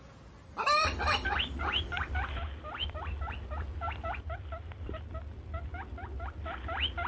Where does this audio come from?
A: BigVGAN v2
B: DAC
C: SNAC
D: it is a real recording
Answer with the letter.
D